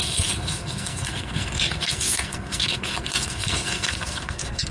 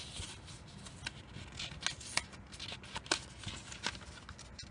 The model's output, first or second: first